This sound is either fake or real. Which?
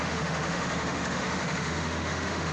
fake